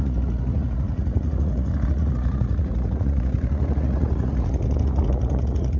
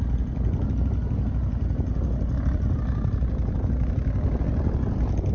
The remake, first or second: first